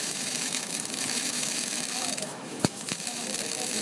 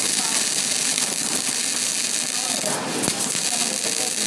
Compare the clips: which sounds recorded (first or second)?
second